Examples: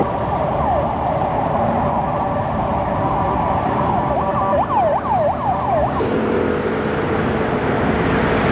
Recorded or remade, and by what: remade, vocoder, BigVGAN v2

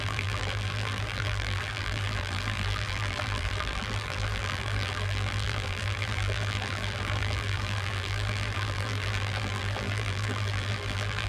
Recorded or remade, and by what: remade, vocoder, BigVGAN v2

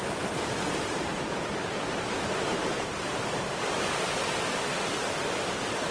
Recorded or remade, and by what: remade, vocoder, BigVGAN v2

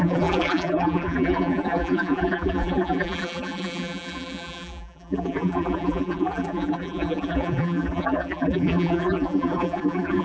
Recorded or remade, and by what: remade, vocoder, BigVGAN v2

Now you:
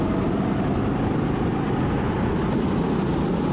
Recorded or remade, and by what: recorded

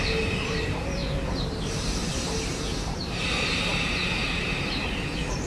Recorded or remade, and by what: remade, vocoder, BigVGAN v2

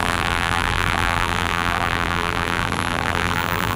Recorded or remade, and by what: remade, vocoder, BigVGAN v2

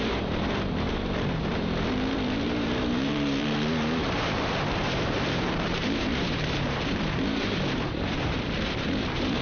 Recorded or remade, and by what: remade, vocoder, BigVGAN v2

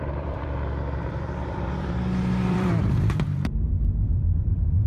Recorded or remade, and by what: remade, vocoder, BigVGAN v2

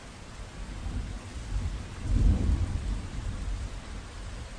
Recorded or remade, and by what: remade, vocoder, BigVGAN v2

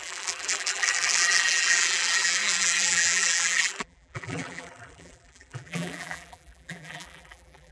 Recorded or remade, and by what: remade, vocoder, BigVGAN v2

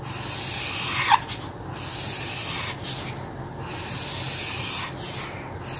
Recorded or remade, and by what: recorded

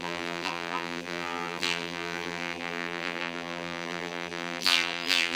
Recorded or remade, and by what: remade, vocoder, BigVGAN v2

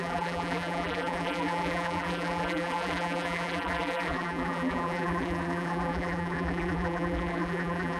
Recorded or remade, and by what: remade, vocoder, BigVGAN v2